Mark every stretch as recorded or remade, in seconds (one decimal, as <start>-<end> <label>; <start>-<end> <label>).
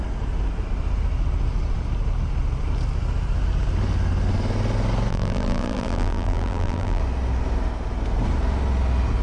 0.0-5.1 recorded; 5.1-7.0 remade; 7.0-9.2 recorded